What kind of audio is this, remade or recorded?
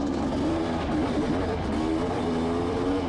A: recorded